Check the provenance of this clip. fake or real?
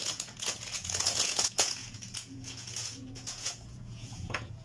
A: fake